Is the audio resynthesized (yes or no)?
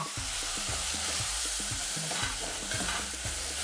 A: yes